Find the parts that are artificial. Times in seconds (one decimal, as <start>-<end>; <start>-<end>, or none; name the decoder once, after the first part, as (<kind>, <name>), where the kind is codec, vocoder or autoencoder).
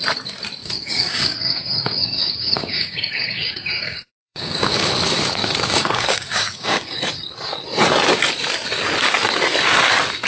0.6-4.9 (codec, DAC); 5.4-7.0